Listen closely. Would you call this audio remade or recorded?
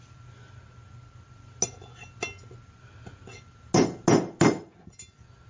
recorded